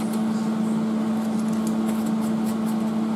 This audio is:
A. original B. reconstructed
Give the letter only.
A